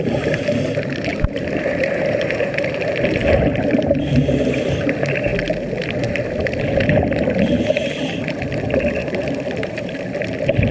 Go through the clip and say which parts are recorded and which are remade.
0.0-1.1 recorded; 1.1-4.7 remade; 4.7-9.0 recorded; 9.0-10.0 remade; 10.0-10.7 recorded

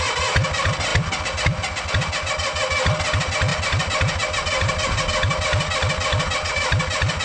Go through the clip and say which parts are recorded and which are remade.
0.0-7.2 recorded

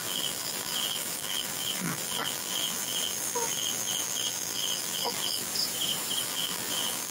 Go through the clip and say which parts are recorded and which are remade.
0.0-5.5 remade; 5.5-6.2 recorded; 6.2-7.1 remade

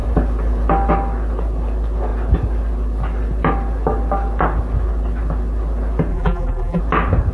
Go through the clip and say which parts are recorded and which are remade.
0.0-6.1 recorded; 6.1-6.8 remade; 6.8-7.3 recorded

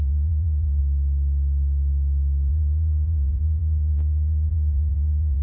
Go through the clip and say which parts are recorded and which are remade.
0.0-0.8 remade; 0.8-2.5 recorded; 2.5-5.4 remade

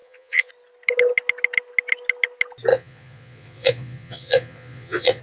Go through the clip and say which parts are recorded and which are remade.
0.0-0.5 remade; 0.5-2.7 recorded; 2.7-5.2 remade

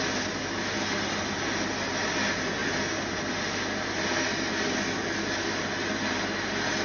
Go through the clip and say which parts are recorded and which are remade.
0.0-6.8 recorded

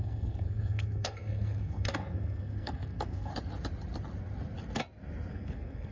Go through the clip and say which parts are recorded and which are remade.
0.0-3.3 remade; 3.3-5.3 recorded; 5.3-5.9 remade